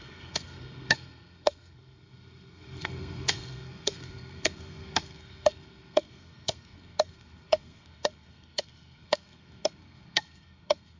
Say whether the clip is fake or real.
fake